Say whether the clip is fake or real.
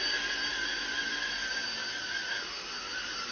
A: real